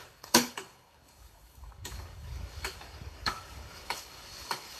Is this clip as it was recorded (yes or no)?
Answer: no